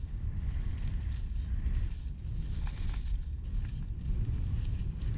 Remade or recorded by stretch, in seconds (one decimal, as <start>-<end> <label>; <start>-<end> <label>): 0.0-5.2 recorded